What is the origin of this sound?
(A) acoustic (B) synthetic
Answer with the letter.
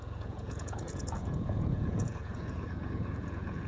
B